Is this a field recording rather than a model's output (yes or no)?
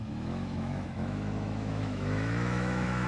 no